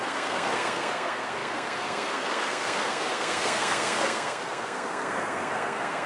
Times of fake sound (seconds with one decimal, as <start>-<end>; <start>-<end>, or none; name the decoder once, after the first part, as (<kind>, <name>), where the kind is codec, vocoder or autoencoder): 0.0-6.1 (codec, SNAC)

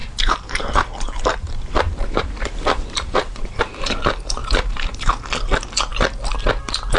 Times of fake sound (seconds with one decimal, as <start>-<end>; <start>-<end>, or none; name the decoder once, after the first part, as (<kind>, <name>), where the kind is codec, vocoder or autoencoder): 0.0-3.6 (vocoder, BigVGAN v2); 4.4-5.1

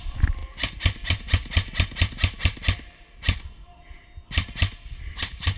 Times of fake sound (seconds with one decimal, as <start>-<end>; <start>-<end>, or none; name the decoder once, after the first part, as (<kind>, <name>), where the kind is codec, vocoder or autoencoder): none